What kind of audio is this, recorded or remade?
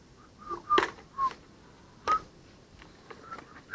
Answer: recorded